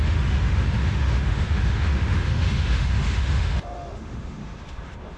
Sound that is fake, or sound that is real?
fake